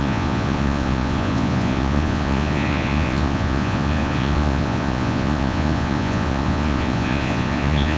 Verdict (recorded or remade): remade